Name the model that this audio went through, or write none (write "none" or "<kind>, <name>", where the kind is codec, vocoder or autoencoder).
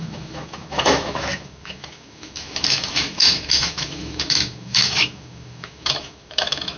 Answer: autoencoder, DAC-VAE